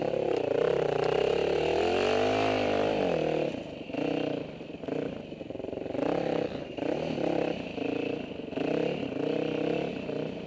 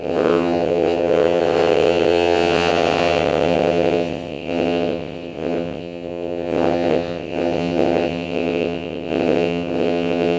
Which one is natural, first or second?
first